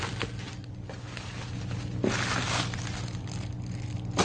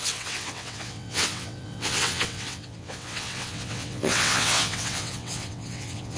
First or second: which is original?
first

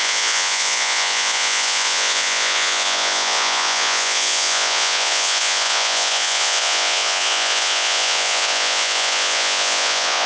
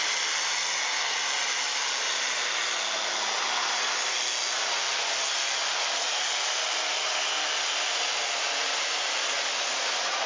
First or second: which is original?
second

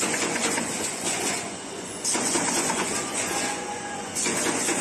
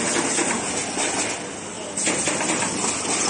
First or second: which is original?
second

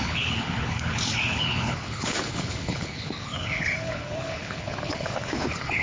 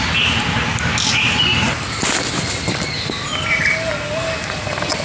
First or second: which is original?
second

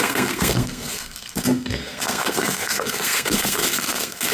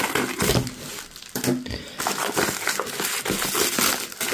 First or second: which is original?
second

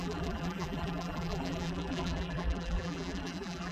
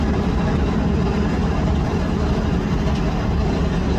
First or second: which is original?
second